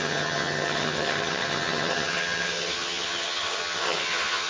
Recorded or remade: remade